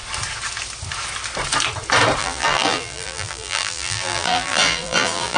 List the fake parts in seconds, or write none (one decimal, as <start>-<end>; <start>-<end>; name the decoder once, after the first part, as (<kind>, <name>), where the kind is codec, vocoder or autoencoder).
2.2-5.4 (vocoder, BigVGAN v2)